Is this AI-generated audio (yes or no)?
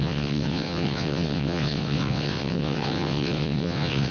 yes